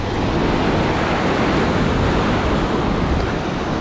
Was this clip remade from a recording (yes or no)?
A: no